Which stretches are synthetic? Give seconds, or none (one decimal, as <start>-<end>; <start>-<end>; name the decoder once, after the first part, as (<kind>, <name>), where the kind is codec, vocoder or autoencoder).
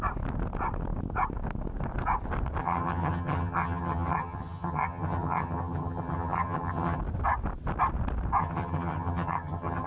2.6-7.0 (vocoder, HiFi-GAN); 8.4-9.9